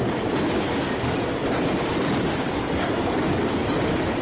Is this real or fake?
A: real